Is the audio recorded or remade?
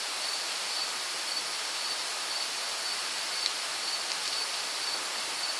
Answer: recorded